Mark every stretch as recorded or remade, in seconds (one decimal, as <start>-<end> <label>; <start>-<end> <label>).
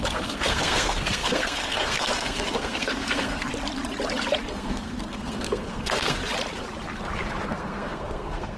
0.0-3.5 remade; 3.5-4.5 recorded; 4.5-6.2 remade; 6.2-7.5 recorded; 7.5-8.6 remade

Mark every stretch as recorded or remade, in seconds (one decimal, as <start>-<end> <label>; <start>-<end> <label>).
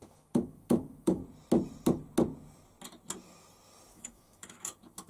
0.0-1.2 remade; 1.2-3.9 recorded; 3.9-5.1 remade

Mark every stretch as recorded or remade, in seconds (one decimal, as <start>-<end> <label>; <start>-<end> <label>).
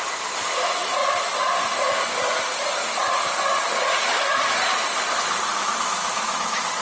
0.0-5.5 recorded; 5.5-6.8 remade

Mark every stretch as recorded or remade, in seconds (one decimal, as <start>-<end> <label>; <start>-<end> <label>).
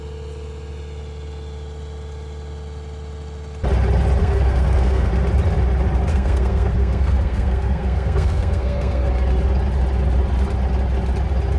0.0-4.2 recorded; 4.2-5.1 remade; 5.1-6.1 recorded; 6.1-9.1 remade; 9.1-11.6 recorded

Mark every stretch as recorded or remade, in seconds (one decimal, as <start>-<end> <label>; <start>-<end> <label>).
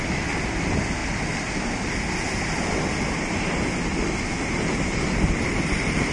0.0-4.3 recorded; 4.3-5.5 remade; 5.5-6.1 recorded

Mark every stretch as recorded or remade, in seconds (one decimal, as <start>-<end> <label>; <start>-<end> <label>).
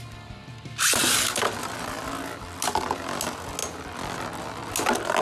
0.0-1.0 recorded; 1.0-1.7 remade; 1.7-5.2 recorded